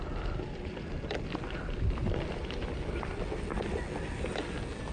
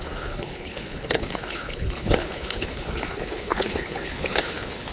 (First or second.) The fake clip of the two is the second